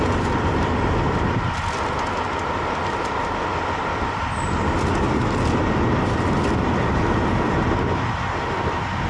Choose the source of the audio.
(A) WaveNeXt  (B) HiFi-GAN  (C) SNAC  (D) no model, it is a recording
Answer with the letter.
D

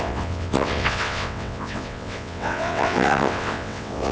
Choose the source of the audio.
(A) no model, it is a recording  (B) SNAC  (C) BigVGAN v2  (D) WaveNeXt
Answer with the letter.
D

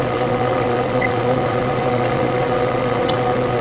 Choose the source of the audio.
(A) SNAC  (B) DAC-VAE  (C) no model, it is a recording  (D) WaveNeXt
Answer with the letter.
D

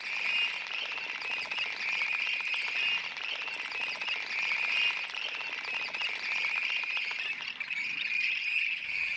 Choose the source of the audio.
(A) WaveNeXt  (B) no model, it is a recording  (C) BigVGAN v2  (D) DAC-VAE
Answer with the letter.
B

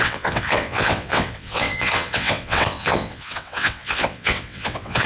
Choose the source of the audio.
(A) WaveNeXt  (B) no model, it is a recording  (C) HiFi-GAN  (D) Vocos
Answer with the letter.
A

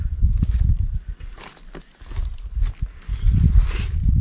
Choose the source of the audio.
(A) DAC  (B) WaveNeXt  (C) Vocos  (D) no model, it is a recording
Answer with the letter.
D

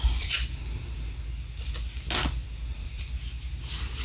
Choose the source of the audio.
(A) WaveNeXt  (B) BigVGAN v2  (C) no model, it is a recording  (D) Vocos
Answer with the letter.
C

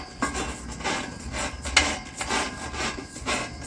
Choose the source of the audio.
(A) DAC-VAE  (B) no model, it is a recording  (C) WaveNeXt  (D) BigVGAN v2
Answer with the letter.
B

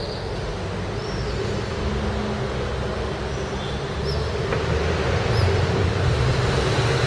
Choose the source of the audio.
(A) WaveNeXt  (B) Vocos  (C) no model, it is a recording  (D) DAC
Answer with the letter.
C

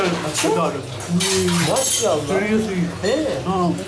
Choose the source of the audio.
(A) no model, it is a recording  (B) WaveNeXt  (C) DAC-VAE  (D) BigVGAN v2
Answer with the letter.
A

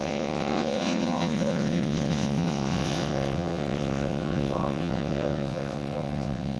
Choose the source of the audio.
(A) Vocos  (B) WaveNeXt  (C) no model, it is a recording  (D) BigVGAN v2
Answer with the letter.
B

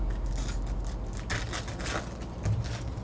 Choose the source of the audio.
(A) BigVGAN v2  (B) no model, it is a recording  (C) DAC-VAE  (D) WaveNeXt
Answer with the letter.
B